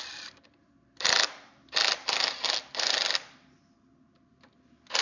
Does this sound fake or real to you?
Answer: real